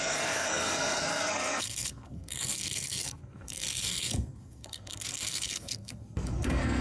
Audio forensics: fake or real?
fake